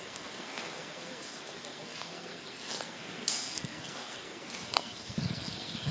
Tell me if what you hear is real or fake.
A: fake